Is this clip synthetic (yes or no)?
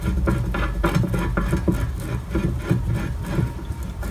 no